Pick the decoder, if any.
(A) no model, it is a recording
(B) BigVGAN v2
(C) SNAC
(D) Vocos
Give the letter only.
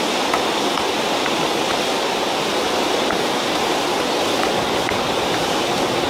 A